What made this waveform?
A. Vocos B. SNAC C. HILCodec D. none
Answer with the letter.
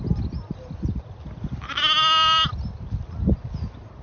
D